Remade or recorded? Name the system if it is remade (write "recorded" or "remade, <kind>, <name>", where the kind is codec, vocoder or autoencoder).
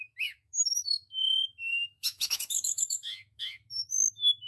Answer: remade, autoencoder, DAC-VAE